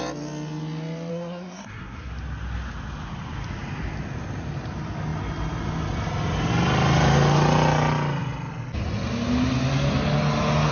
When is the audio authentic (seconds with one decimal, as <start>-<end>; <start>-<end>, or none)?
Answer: 0.0-1.1; 2.1-10.7